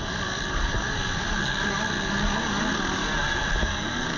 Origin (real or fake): real